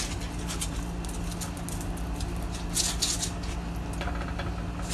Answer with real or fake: real